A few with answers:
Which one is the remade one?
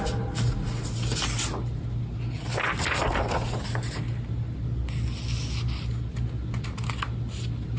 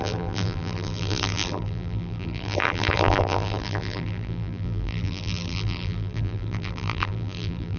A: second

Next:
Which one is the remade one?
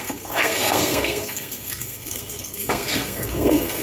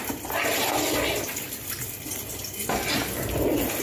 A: first